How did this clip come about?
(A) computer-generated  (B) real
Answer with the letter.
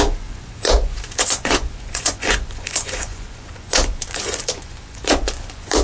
A